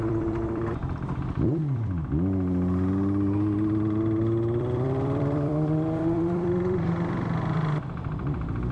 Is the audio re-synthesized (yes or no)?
yes